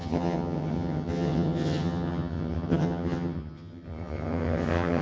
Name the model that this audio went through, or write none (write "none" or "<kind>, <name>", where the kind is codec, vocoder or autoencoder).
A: vocoder, HiFi-GAN